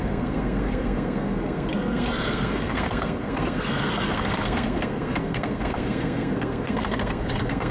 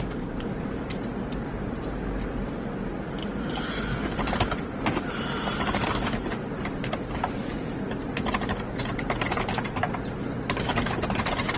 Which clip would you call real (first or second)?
second